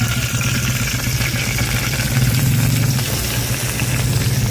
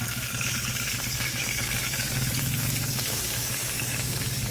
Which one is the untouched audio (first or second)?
first